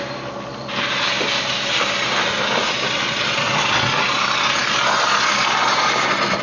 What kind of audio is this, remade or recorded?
recorded